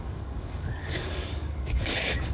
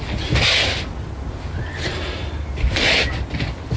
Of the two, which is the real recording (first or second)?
second